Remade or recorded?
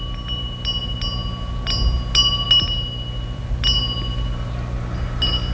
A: recorded